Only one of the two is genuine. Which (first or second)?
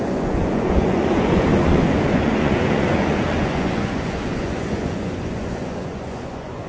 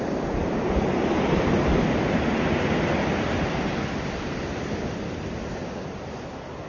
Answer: second